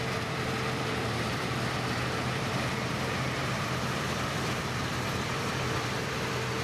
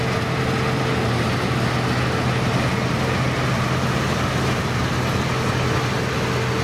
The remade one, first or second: first